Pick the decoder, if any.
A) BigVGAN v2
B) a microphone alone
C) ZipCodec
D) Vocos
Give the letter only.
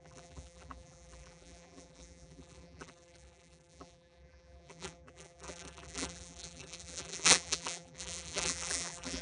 A